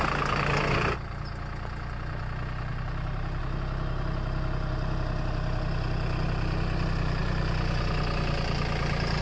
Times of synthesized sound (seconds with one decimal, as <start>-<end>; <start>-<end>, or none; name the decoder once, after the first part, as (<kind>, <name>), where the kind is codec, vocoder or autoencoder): 2.7-3.4 (vocoder, BigVGAN v2)